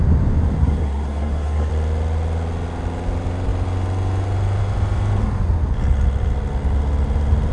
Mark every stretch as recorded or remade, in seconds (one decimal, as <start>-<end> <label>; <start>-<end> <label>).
0.0-0.6 recorded; 0.6-1.7 remade; 1.7-7.5 recorded